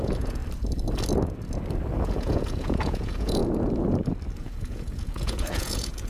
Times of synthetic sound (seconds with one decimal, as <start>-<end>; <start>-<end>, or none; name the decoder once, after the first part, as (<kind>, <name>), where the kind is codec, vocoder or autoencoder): 0.0-0.4 (vocoder, Vocos); 2.0-3.4; 4.4-6.1

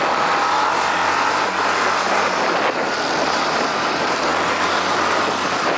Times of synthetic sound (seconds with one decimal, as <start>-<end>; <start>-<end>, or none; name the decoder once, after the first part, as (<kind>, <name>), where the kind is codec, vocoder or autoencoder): none